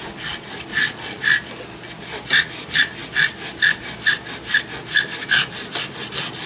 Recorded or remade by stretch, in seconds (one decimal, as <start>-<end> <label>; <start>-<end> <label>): 0.0-0.7 recorded; 0.7-1.3 remade; 1.3-6.5 recorded